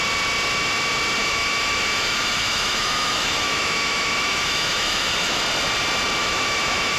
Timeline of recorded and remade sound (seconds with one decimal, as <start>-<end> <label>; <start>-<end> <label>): 0.0-1.2 recorded; 1.2-5.4 remade; 5.4-6.2 recorded; 6.2-7.0 remade